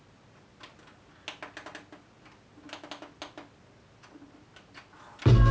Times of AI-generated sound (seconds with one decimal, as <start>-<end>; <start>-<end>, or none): none